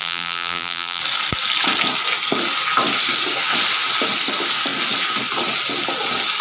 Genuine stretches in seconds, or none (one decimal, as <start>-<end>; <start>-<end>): 1.0-6.4